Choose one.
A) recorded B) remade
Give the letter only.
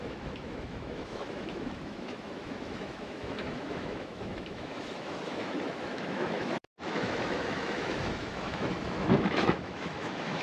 B